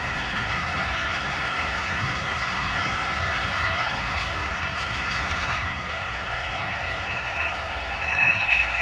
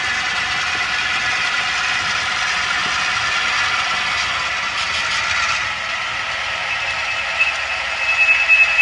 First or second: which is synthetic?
first